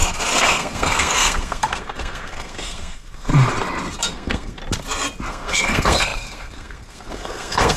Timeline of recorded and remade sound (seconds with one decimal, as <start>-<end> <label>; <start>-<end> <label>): 0.0-3.3 remade; 3.3-4.0 recorded; 4.0-4.6 remade; 4.6-5.3 recorded; 5.3-7.8 remade